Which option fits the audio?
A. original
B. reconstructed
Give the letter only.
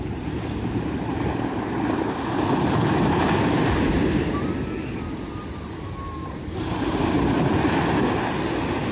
A